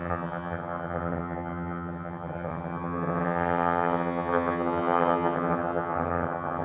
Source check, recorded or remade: remade